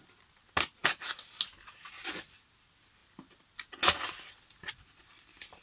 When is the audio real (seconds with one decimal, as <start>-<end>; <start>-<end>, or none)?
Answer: 0.0-5.6